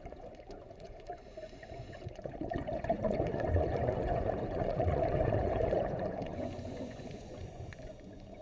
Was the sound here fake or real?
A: fake